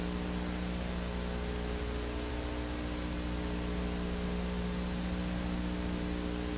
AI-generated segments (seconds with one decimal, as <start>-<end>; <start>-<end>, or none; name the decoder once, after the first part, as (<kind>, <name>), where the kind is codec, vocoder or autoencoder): none